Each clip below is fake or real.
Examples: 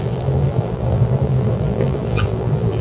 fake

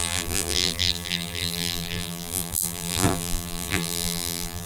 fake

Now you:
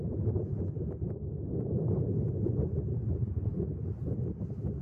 real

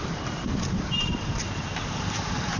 fake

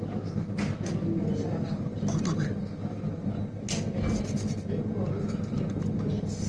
real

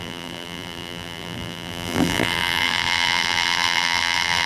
fake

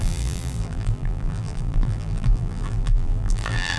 fake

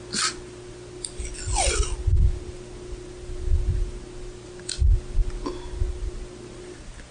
real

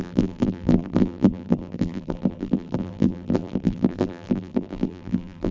fake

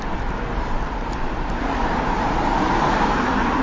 fake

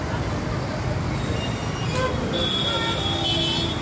real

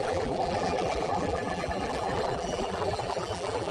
fake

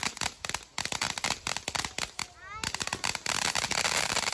real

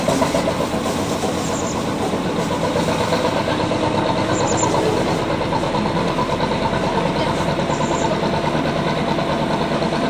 real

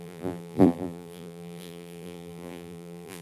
fake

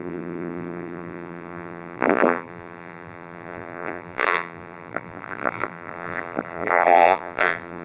fake